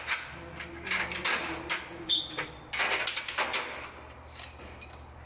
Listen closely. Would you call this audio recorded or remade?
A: recorded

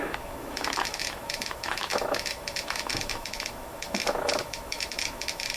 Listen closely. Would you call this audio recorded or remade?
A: remade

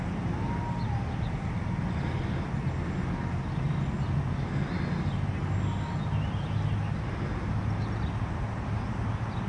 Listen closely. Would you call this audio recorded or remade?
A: recorded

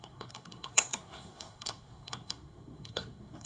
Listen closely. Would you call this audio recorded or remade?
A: remade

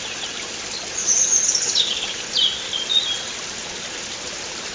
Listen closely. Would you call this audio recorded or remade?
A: recorded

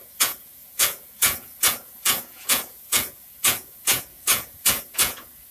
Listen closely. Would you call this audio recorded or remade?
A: remade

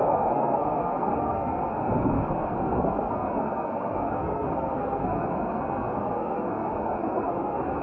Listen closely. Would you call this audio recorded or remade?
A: remade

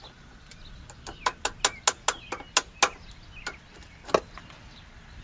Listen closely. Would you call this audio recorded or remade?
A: recorded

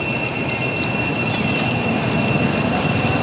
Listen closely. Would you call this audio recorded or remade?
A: recorded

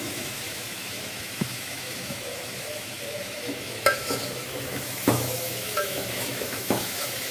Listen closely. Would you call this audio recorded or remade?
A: remade